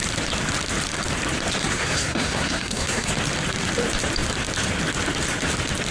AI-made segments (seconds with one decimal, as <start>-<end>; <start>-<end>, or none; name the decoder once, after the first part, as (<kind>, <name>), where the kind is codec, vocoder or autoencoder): 1.6-3.1 (codec, SNAC)